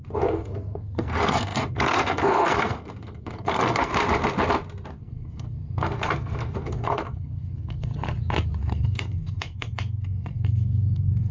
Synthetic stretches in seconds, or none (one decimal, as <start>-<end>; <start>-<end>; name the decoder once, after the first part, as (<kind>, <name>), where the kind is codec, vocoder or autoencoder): 0.0-3.9 (codec, SNAC); 4.9-7.9; 8.6-11.3